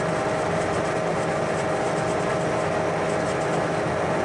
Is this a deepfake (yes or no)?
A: no